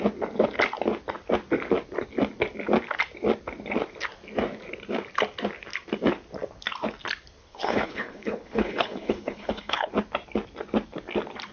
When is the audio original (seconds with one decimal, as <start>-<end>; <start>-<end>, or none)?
0.0-7.4; 9.9-11.5